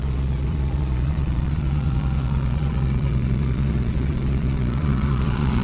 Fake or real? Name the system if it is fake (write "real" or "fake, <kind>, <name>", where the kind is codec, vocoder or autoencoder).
fake, vocoder, Vocos